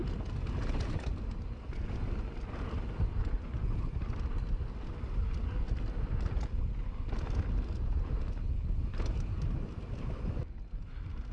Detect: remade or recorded recorded